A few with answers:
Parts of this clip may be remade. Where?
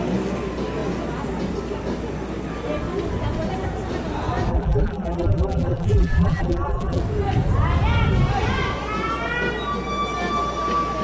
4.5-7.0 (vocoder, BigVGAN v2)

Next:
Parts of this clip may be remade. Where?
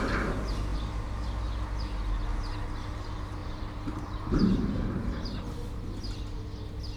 3.4-5.4 (vocoder, BigVGAN v2)